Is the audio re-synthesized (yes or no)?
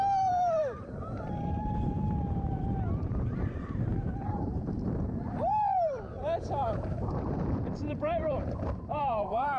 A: yes